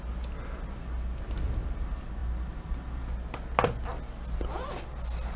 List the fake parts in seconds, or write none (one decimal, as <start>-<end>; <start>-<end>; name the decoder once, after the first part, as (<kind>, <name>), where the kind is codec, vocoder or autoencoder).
none